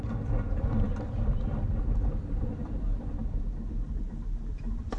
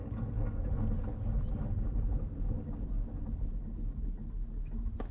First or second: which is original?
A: second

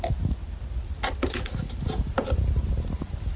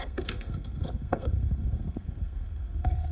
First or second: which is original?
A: first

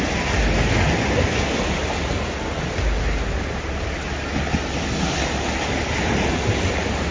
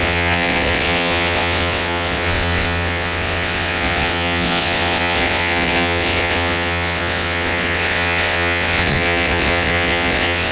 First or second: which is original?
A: first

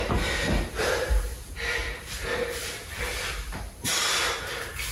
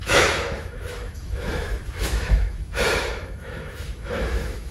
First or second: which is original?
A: first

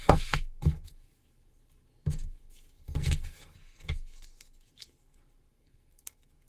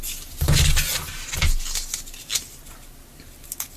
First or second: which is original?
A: second